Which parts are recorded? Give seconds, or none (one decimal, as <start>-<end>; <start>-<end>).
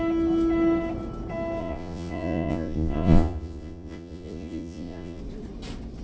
0.0-1.6; 5.2-6.0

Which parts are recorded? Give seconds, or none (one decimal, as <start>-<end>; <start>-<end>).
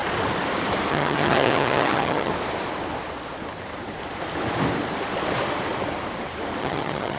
0.0-0.9; 2.3-6.6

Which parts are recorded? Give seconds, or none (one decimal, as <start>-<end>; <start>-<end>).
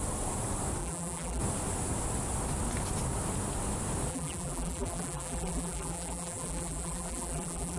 0.0-0.8; 1.4-4.1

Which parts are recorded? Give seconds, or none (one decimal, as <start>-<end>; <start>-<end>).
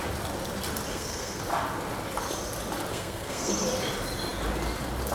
0.0-0.9; 1.4-2.9; 3.5-5.1